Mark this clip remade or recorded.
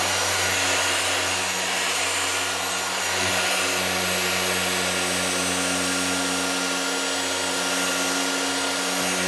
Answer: recorded